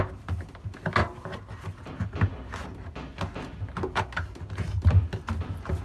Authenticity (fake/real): real